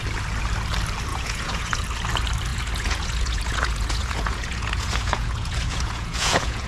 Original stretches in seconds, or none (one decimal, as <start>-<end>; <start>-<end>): 0.0-1.1; 1.8-2.5